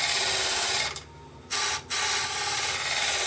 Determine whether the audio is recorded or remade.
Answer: recorded